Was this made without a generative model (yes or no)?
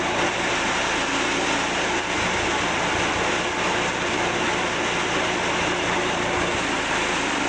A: yes